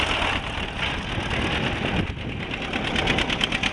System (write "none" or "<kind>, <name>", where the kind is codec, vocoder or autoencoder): none